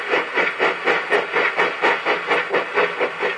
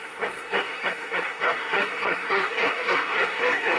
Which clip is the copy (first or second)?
second